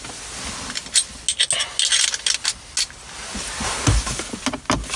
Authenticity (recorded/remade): recorded